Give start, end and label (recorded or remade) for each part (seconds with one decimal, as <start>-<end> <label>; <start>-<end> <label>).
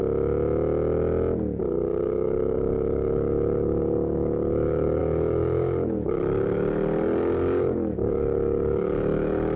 0.0-1.6 recorded; 1.6-9.6 remade